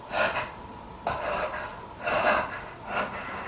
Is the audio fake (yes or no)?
no